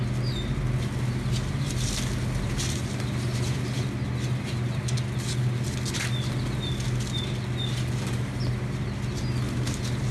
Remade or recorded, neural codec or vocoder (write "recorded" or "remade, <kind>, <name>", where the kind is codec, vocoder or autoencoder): recorded